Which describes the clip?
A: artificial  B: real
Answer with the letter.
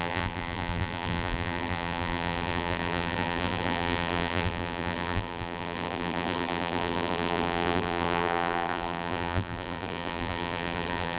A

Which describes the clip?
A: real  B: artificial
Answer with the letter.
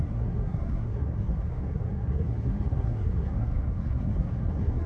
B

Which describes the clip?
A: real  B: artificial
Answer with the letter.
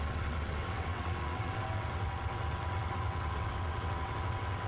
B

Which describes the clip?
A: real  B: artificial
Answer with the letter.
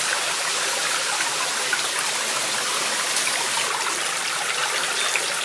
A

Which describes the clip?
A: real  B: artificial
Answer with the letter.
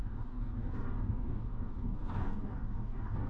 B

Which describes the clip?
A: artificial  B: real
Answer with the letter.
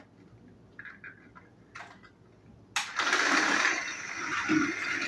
B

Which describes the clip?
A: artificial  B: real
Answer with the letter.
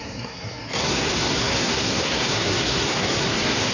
A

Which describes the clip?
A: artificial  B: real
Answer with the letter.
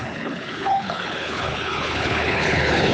A